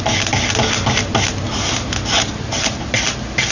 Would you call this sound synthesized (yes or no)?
no